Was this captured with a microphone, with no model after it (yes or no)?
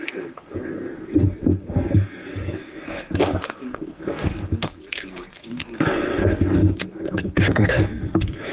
no